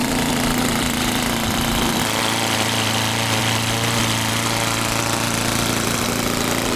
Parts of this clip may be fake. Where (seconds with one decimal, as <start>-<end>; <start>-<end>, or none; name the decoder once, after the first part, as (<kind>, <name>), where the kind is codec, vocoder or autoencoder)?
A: 0.0-2.0 (vocoder, BigVGAN v2); 3.4-4.0